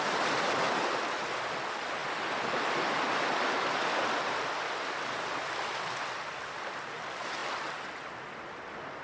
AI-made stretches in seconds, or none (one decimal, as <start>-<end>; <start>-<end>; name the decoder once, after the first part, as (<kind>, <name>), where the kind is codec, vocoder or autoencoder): none